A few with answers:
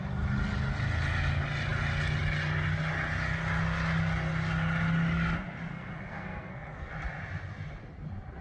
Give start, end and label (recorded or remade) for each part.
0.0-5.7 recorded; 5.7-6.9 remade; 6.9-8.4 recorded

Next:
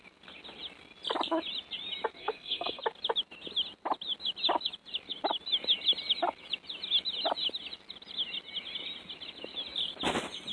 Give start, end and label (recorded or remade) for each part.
0.0-2.2 recorded; 2.2-2.8 remade; 2.8-10.5 recorded

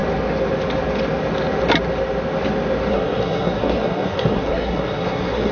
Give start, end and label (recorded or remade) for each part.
0.0-2.9 recorded; 2.9-5.5 remade

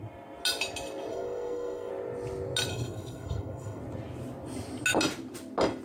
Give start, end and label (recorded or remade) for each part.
0.0-1.1 recorded; 1.1-1.9 remade; 1.9-2.7 recorded; 2.7-3.8 remade; 3.8-5.8 recorded